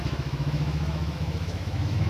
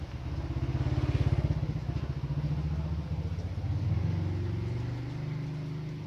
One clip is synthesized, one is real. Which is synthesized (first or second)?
first